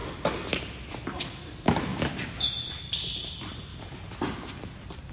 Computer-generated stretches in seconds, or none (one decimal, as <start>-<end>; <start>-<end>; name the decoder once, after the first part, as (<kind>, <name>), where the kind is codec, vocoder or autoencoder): 1.4-1.9 (vocoder, BigVGAN v2); 3.1-3.7; 4.6-5.1